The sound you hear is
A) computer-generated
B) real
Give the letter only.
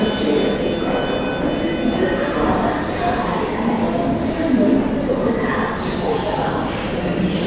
B